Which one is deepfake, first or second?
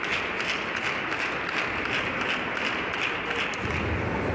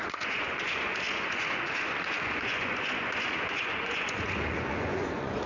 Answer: second